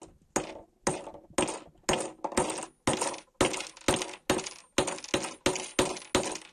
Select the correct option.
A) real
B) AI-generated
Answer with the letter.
A